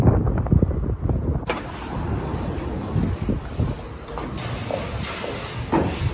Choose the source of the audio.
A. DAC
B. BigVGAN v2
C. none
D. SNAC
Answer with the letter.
C